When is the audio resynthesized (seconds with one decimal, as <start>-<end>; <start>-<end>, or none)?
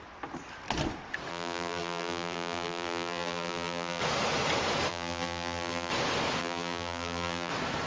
1.3-4.0; 4.9-5.9; 6.4-7.5